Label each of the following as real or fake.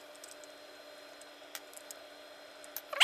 real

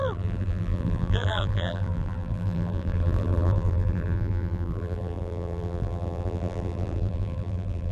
fake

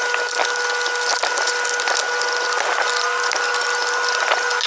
real